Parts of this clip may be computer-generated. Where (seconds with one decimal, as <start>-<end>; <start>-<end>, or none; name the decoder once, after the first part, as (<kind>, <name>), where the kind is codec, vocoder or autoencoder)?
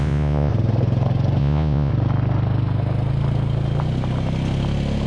0.0-0.5 (vocoder, Vocos); 1.4-1.9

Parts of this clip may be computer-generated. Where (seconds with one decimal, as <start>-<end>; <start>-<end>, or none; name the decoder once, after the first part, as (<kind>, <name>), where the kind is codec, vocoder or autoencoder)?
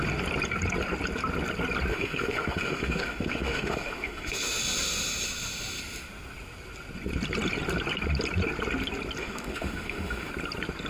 1.9-4.6 (autoencoder, DAC-VAE); 9.2-10.3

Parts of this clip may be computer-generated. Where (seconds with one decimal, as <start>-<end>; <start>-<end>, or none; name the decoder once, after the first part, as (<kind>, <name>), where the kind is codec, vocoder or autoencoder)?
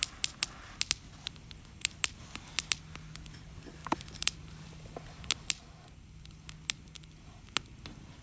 3.8-4.7 (vocoder, BigVGAN v2)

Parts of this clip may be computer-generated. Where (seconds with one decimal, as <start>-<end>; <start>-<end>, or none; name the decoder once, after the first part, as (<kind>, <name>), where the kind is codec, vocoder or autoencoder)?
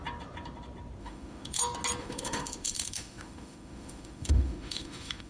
1.0-1.6 (autoencoder, DAC-VAE); 2.0-5.3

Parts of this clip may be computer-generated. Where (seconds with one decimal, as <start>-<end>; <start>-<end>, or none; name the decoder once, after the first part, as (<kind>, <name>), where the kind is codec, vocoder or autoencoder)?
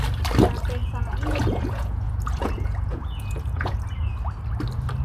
0.8-3.8 (vocoder, Vocos)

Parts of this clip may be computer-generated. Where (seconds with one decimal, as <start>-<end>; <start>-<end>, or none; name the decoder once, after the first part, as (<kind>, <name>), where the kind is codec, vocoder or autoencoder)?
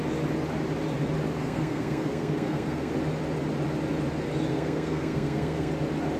1.4-2.9 (codec, SNAC); 4.5-5.7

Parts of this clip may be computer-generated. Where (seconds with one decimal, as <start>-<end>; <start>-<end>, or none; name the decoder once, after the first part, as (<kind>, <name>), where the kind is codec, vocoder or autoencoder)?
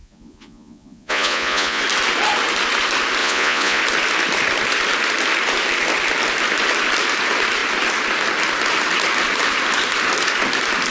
0.0-1.8 (vocoder, Vocos); 3.2-3.8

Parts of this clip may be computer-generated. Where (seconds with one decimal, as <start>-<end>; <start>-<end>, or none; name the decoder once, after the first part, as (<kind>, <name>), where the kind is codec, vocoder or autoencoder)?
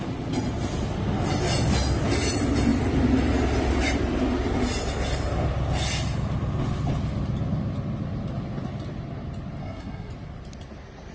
9.6-10.1 (codec, SNAC)